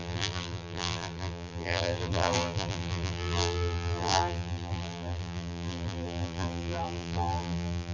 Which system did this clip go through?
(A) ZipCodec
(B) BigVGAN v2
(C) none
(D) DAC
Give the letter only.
B